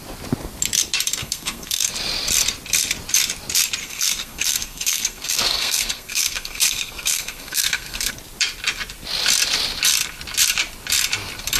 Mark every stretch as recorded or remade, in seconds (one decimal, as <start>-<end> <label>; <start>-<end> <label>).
0.0-1.2 recorded; 1.2-1.9 remade; 1.9-3.8 recorded; 3.8-8.1 remade; 8.1-11.6 recorded